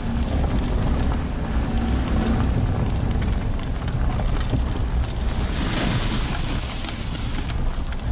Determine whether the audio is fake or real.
real